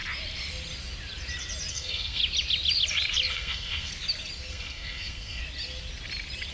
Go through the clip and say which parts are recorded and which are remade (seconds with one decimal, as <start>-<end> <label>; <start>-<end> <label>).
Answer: 0.0-1.7 recorded; 1.7-2.2 remade; 2.2-3.3 recorded; 3.3-3.9 remade; 3.9-4.5 recorded; 4.5-5.4 remade; 5.4-6.5 recorded